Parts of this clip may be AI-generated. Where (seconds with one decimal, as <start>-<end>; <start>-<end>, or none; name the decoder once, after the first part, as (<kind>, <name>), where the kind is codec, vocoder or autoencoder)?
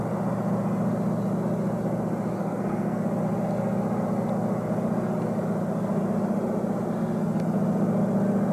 2.4-3.0 (codec, SNAC)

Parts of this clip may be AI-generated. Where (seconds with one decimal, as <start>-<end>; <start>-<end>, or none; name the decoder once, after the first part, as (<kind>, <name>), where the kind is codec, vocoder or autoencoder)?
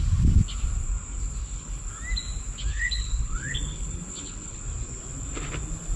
1.4-1.9 (codec, HILCodec); 2.7-4.6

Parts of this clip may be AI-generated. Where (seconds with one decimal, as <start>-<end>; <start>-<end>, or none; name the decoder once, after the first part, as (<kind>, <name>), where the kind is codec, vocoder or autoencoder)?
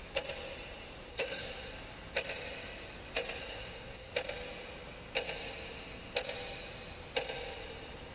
1.1-1.7 (codec, SNAC); 3.4-4.1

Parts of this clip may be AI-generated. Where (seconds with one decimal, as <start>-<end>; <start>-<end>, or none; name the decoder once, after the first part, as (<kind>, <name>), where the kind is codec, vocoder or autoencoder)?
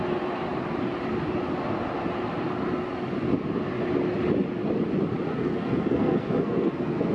5.3-7.1 (codec, SNAC)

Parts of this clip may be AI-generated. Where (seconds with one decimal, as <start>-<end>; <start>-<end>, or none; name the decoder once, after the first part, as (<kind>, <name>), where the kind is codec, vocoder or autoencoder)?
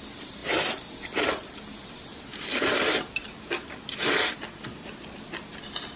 none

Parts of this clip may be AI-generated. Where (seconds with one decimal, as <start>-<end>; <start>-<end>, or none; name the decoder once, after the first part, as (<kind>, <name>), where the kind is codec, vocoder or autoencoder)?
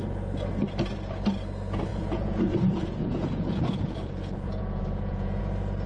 1.9-5.4 (vocoder, Vocos)